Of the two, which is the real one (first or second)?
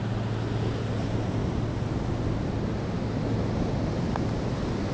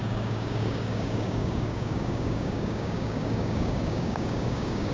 first